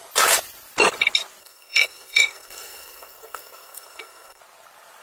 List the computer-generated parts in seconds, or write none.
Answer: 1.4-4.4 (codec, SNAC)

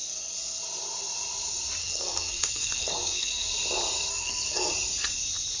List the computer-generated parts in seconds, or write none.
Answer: 0.0-0.6 (codec, SNAC); 1.8-3.5; 4.1-4.7

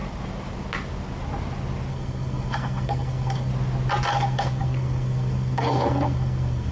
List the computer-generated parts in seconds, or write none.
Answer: 1.9-3.5 (codec, SNAC); 4.1-6.7

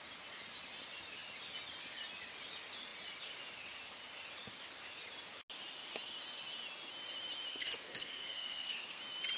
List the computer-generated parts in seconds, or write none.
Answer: 7.5-9.0 (codec, SNAC)

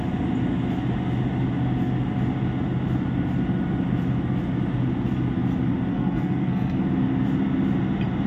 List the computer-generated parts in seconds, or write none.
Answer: 5.9-6.8 (codec, SNAC)

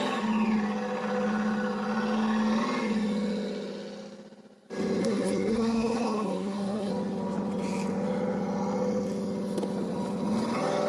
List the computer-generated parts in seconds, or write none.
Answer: 5.0-6.9 (codec, SNAC)

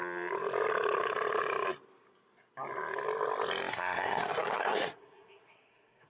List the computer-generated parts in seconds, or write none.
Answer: 3.7-6.1 (codec, SNAC)